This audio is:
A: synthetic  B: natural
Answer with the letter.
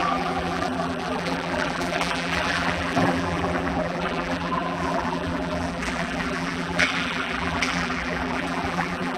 A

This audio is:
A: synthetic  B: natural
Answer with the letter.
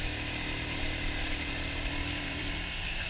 A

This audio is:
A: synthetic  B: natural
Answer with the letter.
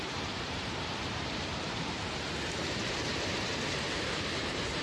A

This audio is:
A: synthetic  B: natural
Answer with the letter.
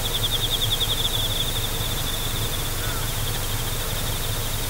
B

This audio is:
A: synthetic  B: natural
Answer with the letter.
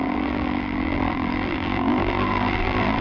A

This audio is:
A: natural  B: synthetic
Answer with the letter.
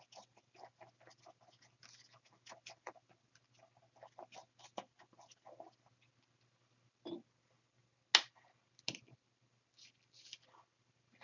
A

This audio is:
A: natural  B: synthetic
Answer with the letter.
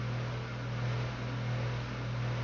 A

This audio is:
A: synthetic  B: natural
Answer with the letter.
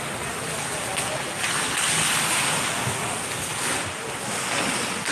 B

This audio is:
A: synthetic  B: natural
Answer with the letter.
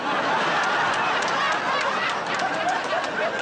B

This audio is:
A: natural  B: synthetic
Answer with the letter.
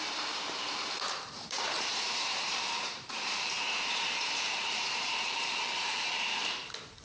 B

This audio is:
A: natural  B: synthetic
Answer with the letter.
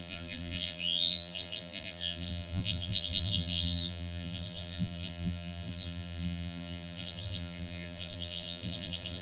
B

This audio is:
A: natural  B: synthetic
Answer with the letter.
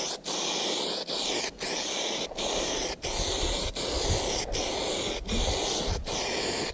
A